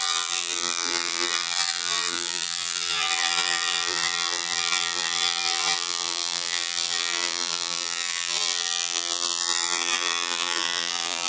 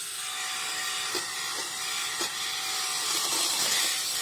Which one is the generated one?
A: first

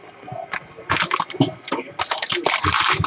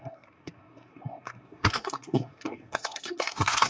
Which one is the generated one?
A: second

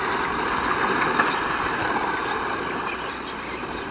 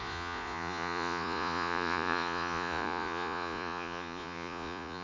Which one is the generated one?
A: second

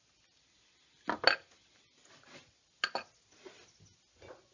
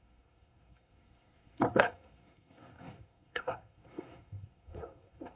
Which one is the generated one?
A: second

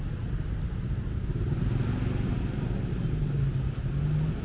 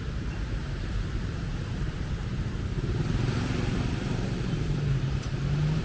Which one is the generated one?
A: second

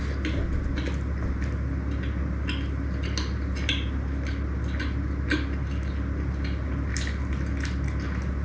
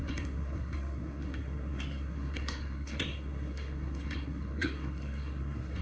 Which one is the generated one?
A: second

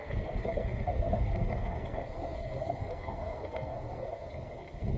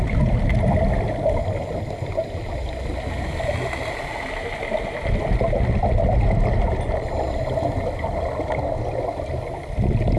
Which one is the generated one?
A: first